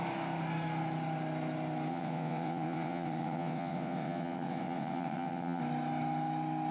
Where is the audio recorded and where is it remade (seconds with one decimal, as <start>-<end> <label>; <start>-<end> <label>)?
0.0-1.9 recorded; 1.9-5.6 remade; 5.6-6.7 recorded